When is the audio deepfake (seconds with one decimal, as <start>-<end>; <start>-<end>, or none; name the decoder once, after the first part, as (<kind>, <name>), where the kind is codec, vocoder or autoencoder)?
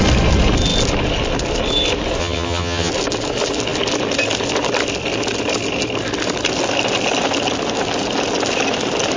2.2-2.9 (vocoder, HiFi-GAN)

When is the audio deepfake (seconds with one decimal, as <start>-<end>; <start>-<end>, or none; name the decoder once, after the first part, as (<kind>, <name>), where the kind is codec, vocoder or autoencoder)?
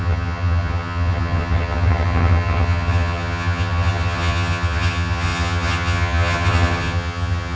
0.0-7.6 (vocoder, HiFi-GAN)